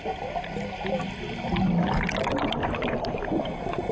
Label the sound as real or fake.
real